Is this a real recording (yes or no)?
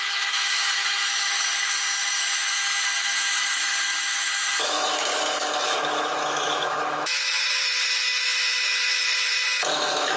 no